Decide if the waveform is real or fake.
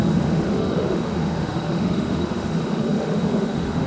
fake